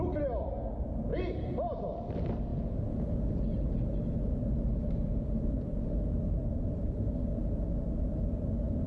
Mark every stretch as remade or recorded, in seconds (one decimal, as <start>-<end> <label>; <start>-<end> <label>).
0.0-8.9 recorded